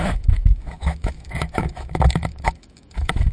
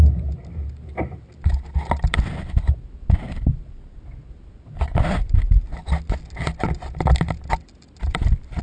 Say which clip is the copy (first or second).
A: first